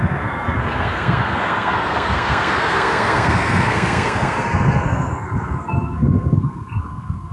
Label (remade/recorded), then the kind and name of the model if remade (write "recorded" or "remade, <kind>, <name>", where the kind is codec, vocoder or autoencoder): remade, codec, SNAC